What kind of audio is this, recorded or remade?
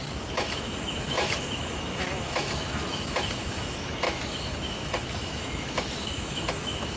remade